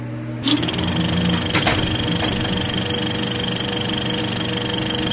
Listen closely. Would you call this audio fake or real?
real